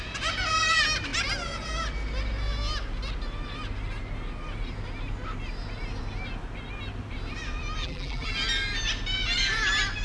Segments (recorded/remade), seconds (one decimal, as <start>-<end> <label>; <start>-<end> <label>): 0.0-7.8 recorded; 7.8-8.3 remade; 8.3-10.0 recorded